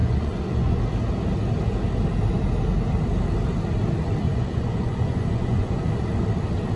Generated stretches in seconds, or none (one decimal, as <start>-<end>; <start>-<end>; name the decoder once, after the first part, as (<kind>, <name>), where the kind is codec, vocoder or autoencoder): 0.0-0.8 (vocoder, Vocos); 4.2-5.8